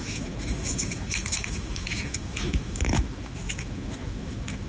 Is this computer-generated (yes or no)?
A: yes